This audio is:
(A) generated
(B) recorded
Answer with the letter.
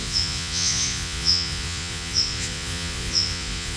A